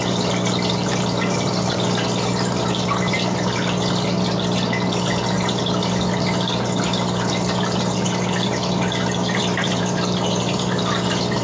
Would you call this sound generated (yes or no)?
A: no